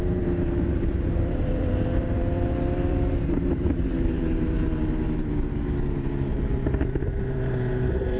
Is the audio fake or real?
fake